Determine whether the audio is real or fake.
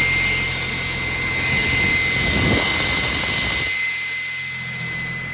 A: real